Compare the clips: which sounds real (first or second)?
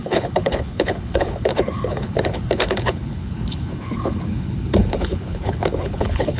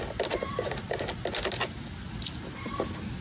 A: second